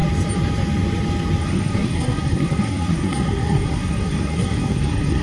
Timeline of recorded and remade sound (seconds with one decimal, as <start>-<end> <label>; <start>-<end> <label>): 0.0-1.4 recorded; 1.4-5.2 remade